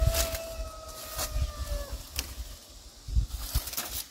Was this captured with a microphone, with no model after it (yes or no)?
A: yes